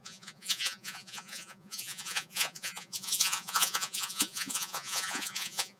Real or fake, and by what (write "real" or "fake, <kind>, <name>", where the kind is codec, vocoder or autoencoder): fake, vocoder, Vocos